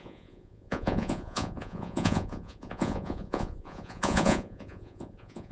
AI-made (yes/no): yes